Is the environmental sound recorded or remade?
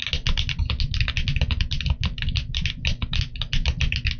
recorded